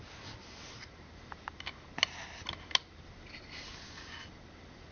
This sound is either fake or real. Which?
real